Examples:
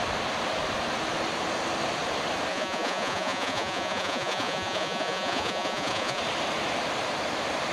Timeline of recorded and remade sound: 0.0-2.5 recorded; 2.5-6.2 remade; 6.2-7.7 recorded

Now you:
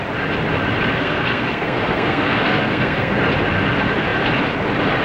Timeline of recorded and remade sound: 0.0-1.0 recorded; 1.0-3.2 remade; 3.2-5.0 recorded

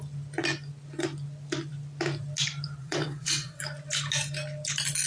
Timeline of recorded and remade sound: 0.0-2.8 recorded; 2.8-3.6 remade; 3.6-5.1 recorded

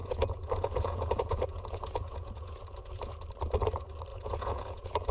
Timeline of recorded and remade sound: 0.0-3.1 remade; 3.1-4.1 recorded; 4.1-5.1 remade

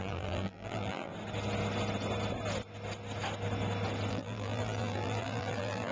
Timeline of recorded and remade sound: 0.0-1.1 remade; 1.1-4.1 recorded; 4.1-5.9 remade

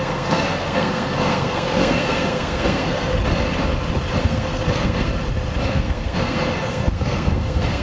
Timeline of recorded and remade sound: 0.0-3.1 remade; 3.1-4.2 recorded; 4.2-5.1 remade; 5.1-5.7 recorded; 5.7-7.8 remade

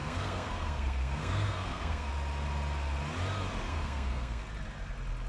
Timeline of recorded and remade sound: 0.0-2.1 remade; 2.1-3.7 recorded; 3.7-4.4 remade; 4.4-5.3 recorded

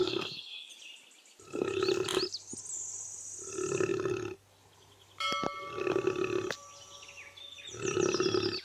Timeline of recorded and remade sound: 0.0-0.7 remade; 0.7-8.6 recorded